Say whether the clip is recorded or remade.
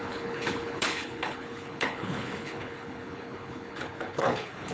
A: remade